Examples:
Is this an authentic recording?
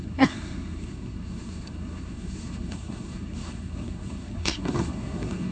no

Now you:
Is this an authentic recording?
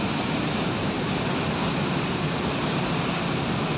yes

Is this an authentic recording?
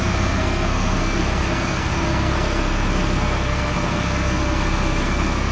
no